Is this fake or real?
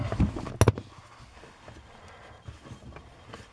real